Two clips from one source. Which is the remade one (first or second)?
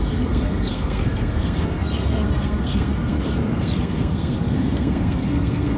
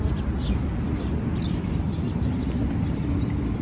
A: first